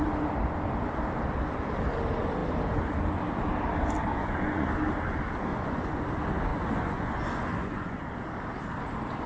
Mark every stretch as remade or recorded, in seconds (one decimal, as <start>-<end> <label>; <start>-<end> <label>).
0.0-4.1 recorded; 4.1-4.7 remade; 4.7-5.5 recorded; 5.5-6.0 remade; 6.0-6.5 recorded; 6.5-8.0 remade; 8.0-9.3 recorded